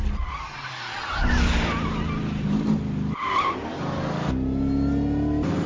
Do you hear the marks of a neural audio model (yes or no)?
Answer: no